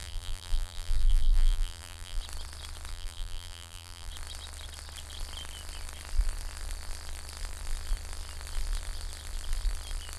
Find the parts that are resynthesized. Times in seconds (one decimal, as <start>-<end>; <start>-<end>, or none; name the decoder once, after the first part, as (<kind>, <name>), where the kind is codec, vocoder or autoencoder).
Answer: 0.0-2.2 (vocoder, BigVGAN v2); 2.9-4.1